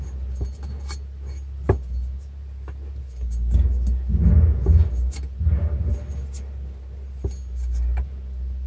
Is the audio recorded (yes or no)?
yes